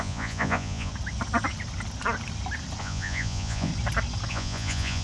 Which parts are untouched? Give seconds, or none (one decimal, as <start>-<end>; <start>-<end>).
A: 0.9-2.8; 3.7-4.3